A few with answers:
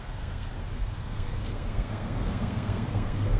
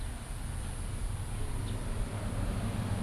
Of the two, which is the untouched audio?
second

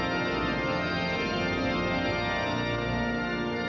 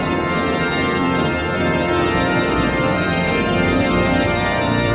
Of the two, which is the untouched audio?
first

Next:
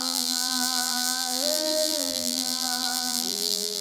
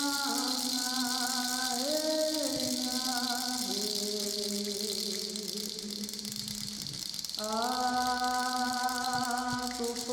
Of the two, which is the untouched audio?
second